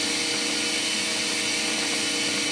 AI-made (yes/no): no